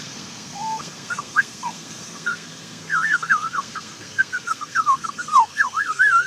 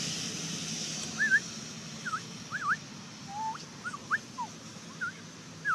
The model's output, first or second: first